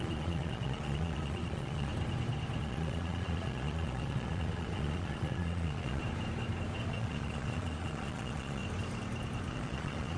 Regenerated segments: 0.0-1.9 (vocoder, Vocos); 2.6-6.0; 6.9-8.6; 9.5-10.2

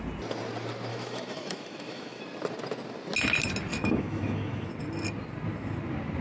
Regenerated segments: 0.9-2.2 (autoencoder, DAC-VAE); 3.7-4.7

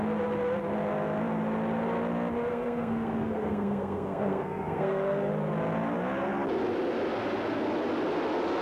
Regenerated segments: 2.5-5.3 (codec, SNAC)